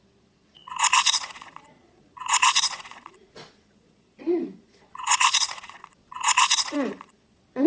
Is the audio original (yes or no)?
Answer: no